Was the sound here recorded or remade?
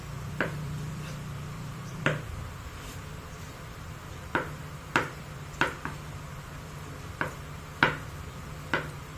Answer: remade